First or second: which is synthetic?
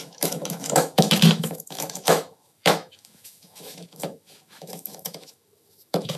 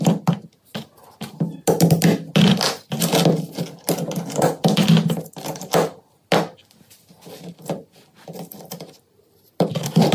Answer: first